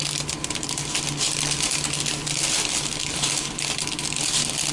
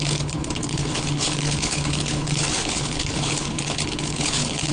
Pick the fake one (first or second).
second